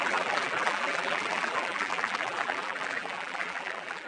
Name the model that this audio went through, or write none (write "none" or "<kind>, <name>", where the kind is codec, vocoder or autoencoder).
vocoder, BigVGAN v2